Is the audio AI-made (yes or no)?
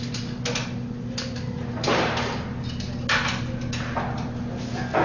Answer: no